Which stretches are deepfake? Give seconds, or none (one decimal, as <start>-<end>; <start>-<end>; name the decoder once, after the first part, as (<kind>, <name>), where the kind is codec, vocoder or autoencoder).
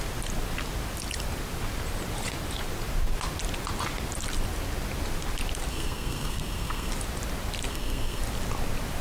5.7-6.9 (codec, SNAC); 7.7-8.2